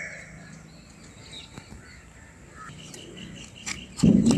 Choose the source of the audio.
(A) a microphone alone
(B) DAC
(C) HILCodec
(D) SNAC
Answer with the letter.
A